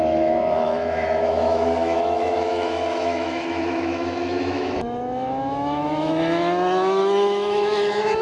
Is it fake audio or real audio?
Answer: fake